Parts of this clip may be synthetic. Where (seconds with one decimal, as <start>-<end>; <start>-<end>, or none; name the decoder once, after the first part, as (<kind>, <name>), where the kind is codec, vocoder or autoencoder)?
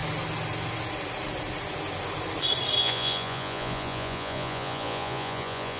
2.8-5.8 (vocoder, Vocos)